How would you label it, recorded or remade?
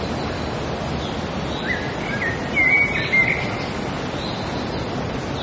recorded